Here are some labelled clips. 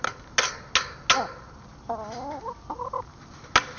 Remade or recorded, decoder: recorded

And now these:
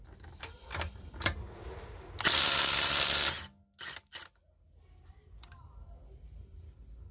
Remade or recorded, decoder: recorded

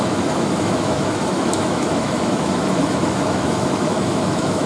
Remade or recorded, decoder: remade, autoencoder, DAC-VAE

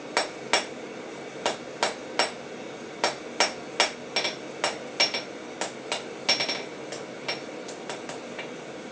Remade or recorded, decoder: recorded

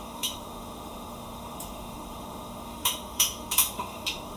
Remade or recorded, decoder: remade, autoencoder, DAC-VAE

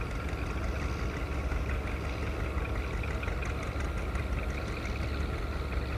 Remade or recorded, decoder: recorded